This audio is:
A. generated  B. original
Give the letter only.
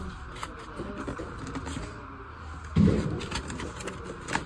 B